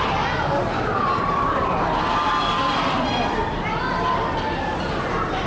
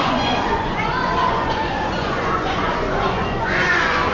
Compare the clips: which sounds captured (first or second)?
first